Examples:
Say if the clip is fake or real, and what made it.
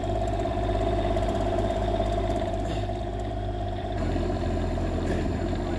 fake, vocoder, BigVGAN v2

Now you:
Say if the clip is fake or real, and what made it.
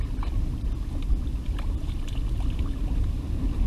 real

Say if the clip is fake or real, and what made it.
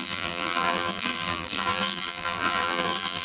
fake, vocoder, BigVGAN v2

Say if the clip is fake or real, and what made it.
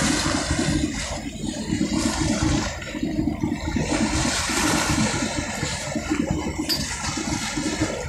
real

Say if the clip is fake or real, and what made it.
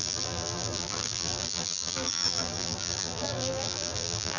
fake, vocoder, BigVGAN v2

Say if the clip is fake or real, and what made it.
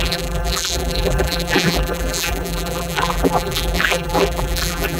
fake, vocoder, BigVGAN v2